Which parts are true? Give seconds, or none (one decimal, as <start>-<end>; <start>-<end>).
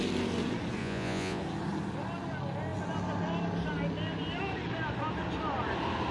0.0-0.8; 1.4-6.1